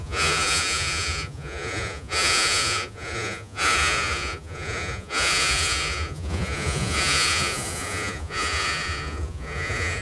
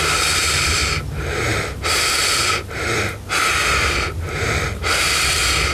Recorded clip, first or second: second